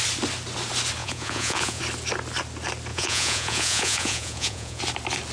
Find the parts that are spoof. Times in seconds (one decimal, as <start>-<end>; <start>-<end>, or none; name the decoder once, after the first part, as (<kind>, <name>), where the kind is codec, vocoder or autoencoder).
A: 1.0-1.8 (vocoder, Vocos); 2.9-4.8